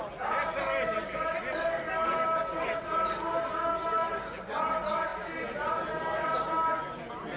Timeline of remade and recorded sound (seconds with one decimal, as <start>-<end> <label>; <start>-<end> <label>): 0.0-7.4 recorded